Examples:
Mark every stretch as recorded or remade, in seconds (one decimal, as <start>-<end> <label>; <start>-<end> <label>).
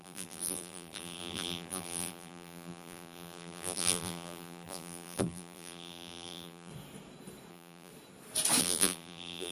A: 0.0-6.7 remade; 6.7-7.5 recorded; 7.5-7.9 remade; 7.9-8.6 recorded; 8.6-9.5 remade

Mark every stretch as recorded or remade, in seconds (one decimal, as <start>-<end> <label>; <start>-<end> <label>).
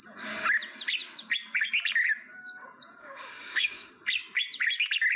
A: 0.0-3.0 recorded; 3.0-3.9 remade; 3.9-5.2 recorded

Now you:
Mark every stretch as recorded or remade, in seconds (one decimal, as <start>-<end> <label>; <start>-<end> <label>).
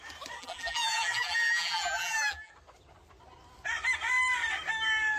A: 0.0-0.4 recorded; 0.4-2.5 remade; 2.5-5.2 recorded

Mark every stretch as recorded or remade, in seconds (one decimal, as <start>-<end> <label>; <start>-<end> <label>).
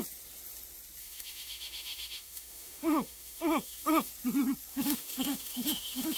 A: 0.0-1.0 recorded; 1.0-4.1 remade; 4.1-4.7 recorded; 4.7-6.2 remade